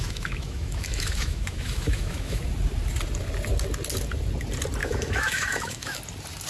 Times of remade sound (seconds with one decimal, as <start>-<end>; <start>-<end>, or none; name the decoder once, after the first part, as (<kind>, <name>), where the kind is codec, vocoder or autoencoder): 0.0-2.4 (autoencoder, DAC-VAE); 4.8-6.0